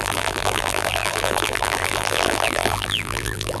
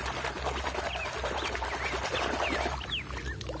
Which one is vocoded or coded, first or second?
first